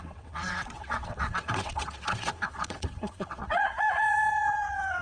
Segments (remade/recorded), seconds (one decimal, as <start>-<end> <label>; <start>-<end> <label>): 0.0-5.0 remade